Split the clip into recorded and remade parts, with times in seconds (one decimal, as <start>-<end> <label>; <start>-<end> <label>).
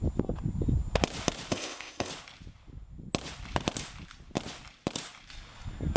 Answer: 0.0-1.5 recorded; 1.5-2.1 remade; 2.1-6.0 recorded